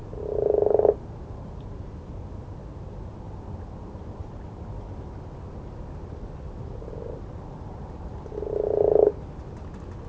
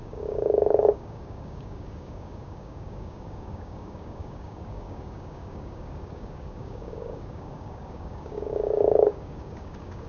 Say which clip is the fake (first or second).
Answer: second